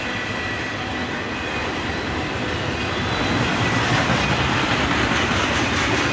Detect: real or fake real